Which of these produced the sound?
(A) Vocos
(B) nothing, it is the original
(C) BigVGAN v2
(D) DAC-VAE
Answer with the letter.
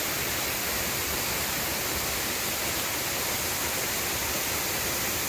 B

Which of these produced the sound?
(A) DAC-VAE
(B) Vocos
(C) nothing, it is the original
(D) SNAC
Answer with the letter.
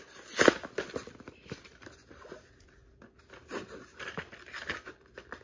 C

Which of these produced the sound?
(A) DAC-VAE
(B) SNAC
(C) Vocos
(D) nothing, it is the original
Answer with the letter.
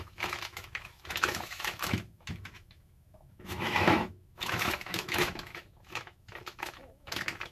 A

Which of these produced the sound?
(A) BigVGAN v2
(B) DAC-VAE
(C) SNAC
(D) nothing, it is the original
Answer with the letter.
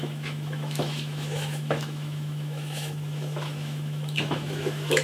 B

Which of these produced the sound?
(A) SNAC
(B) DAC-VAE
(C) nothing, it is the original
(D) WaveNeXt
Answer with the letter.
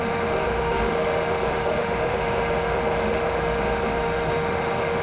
B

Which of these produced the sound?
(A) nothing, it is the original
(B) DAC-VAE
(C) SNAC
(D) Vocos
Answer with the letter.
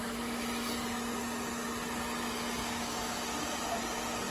A